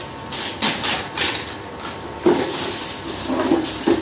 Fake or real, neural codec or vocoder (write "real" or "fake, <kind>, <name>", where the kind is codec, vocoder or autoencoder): real